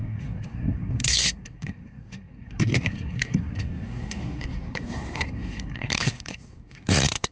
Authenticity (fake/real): fake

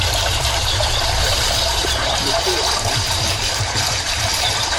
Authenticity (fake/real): fake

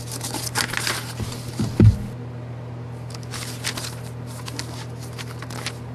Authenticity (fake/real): real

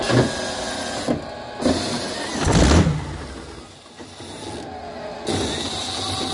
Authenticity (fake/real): real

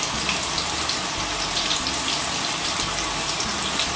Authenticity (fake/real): real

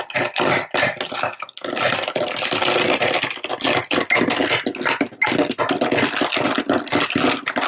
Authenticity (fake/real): real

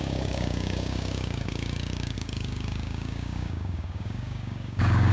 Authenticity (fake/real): fake